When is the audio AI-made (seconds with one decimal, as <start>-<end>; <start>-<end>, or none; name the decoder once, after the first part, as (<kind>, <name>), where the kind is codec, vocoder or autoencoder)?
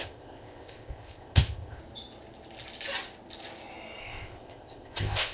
0.0-1.8 (codec, ZipCodec); 4.0-5.3